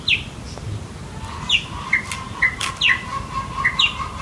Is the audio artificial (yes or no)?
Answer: no